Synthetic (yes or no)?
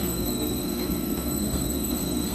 yes